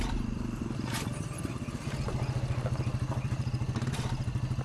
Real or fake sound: fake